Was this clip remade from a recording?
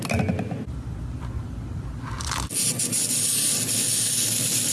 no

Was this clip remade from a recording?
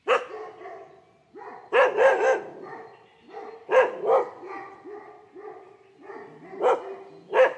no